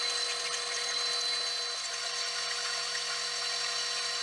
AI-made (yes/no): no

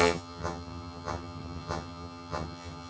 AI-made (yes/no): yes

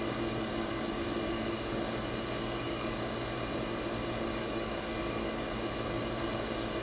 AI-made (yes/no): yes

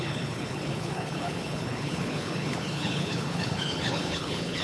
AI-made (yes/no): yes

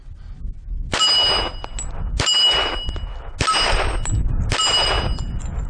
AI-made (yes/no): no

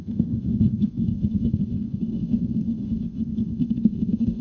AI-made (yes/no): yes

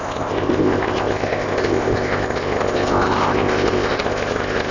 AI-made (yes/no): yes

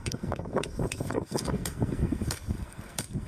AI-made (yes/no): yes